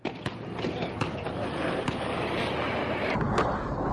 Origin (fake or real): real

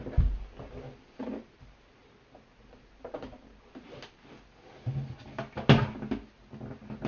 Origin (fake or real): real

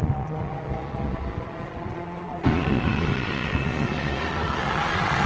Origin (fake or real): fake